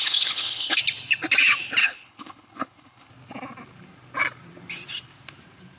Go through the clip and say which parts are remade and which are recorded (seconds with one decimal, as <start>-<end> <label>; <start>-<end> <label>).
0.0-0.8 remade; 0.8-1.8 recorded; 1.8-3.1 remade; 3.1-5.8 recorded